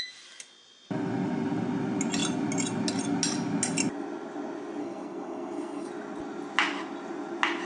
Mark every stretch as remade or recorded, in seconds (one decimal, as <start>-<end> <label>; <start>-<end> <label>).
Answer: 0.0-4.8 recorded; 4.8-5.9 remade; 5.9-7.6 recorded